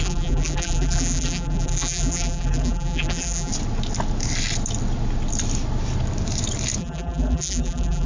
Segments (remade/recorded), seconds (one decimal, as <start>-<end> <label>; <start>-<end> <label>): 0.0-3.5 remade; 3.5-6.8 recorded; 6.8-8.1 remade